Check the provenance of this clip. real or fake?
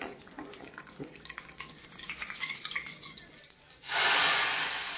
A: fake